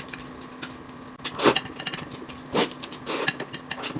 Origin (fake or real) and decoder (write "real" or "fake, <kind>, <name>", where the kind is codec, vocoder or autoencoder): real